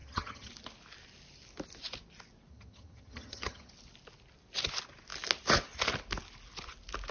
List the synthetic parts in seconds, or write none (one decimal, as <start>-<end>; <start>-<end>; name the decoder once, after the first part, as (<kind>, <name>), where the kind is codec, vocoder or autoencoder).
0.0-0.5 (vocoder, HiFi-GAN); 2.5-3.7